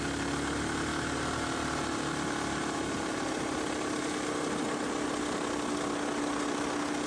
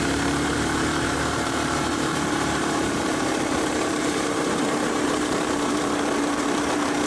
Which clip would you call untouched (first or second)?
first